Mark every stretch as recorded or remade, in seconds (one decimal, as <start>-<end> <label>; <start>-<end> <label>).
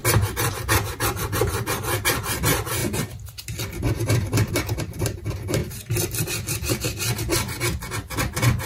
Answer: 0.0-8.7 recorded